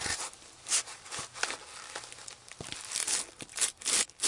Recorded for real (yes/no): yes